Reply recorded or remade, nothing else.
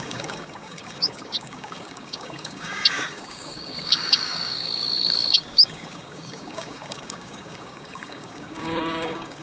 remade